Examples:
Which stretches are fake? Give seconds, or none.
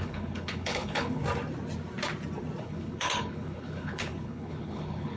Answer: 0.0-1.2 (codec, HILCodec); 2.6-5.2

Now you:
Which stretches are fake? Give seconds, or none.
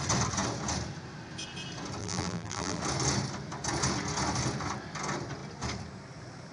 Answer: 2.0-2.8 (vocoder, BigVGAN v2)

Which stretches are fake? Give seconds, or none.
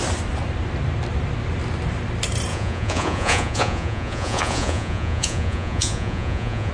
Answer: 2.5-6.7 (vocoder, Vocos)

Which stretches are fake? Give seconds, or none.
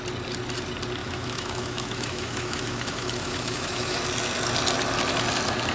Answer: 1.0-4.0 (autoencoder, DAC-VAE)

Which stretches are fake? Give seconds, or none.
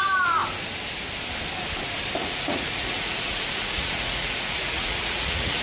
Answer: 2.2-5.6 (vocoder, Vocos)